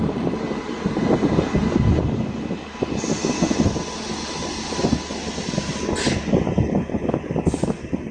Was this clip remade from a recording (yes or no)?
no